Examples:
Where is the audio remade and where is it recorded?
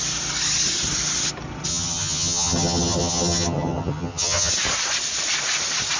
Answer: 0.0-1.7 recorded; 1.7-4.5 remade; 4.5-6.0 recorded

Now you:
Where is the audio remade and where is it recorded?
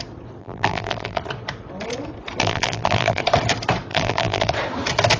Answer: 0.0-0.4 recorded; 0.4-1.2 remade; 1.2-2.4 recorded; 2.4-3.2 remade; 3.2-3.9 recorded; 3.9-4.5 remade; 4.5-5.2 recorded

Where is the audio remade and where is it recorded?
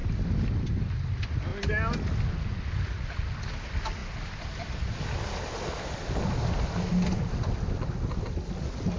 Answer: 0.0-9.0 recorded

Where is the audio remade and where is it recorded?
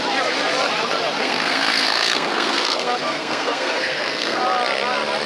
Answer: 0.0-1.2 recorded; 1.2-4.4 remade; 4.4-5.3 recorded